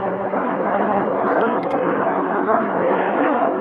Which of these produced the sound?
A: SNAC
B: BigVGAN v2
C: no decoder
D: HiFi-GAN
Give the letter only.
A